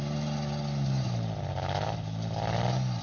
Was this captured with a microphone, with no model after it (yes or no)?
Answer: yes